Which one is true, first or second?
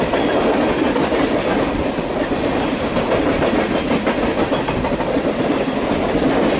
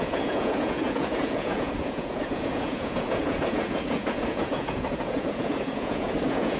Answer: first